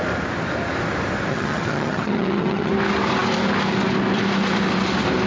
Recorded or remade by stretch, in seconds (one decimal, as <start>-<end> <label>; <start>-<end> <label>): 0.0-1.3 recorded; 1.3-2.7 remade; 2.7-5.3 recorded